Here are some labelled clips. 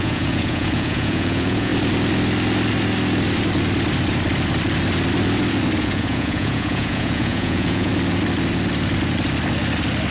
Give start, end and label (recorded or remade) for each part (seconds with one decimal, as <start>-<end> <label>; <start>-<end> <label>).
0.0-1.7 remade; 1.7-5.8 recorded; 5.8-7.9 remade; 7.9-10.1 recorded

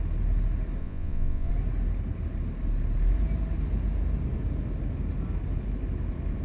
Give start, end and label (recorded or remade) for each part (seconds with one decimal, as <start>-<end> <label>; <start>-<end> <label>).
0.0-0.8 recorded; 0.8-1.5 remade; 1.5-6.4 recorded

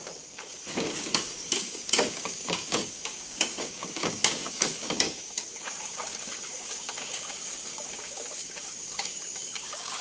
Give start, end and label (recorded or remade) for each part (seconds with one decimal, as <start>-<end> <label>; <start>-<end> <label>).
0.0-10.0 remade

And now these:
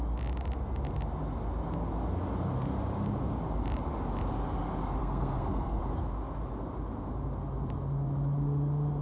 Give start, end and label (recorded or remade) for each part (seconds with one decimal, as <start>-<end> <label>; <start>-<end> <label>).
0.0-5.0 recorded; 5.0-5.8 remade; 5.8-9.0 recorded